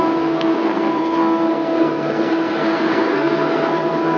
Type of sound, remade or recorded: remade